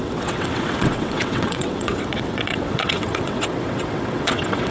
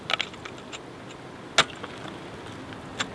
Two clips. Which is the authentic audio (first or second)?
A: second